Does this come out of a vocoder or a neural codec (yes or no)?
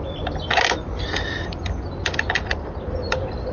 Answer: no